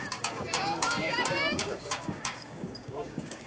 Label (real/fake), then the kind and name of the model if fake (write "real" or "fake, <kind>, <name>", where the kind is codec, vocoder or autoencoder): fake, codec, DAC